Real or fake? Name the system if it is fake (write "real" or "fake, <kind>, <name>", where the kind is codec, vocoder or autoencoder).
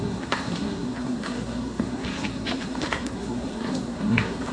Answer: fake, codec, SNAC